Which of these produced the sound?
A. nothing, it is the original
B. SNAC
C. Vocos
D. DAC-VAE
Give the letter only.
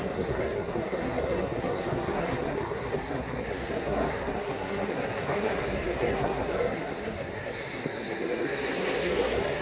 B